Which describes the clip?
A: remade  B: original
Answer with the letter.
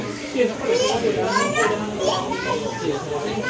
B